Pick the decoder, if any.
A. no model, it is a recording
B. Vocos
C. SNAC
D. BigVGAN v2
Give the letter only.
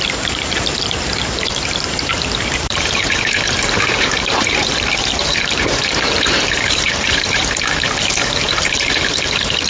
D